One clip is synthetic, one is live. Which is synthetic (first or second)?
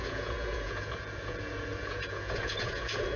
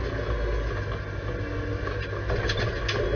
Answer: first